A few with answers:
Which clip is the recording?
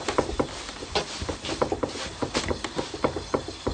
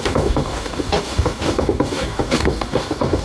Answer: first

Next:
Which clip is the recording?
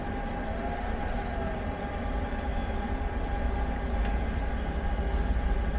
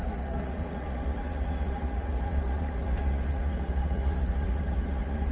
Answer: first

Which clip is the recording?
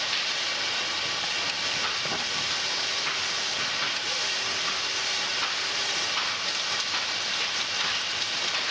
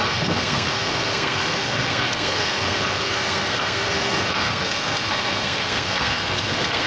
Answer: first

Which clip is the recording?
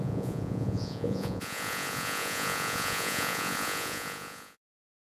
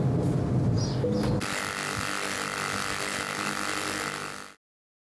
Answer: second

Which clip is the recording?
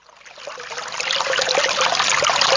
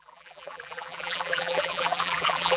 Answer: first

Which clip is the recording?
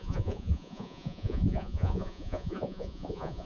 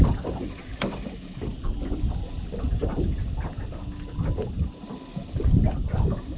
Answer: second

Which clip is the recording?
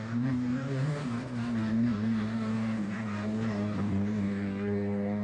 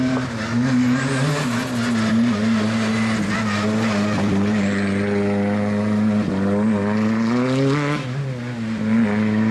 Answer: second